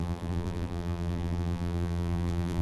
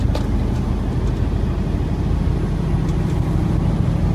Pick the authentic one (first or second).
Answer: second